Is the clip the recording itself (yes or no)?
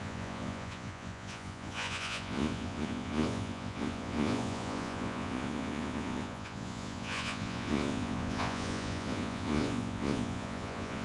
no